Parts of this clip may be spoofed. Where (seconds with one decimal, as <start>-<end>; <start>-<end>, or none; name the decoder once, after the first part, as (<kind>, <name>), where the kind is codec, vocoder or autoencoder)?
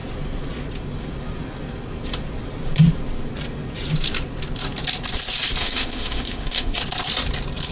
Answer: 5.6-6.8 (autoencoder, DAC-VAE)